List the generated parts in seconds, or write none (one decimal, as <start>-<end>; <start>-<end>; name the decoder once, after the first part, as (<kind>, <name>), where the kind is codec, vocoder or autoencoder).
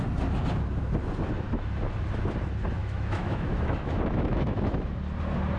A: 2.8-4.9 (autoencoder, DAC-VAE)